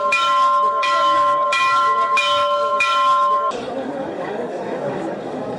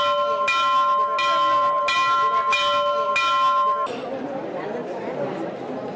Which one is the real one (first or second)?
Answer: second